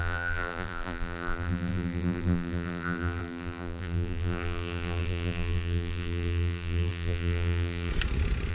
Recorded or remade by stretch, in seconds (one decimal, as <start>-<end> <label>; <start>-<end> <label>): 0.0-7.9 remade; 7.9-8.5 recorded